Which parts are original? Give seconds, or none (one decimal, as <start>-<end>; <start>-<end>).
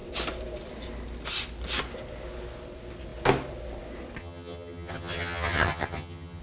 0.0-4.2